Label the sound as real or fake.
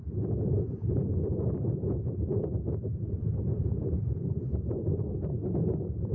real